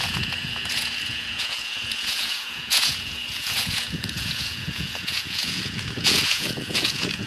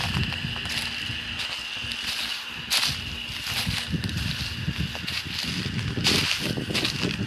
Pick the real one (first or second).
second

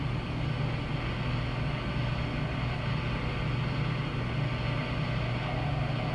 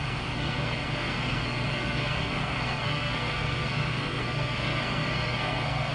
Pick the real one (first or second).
first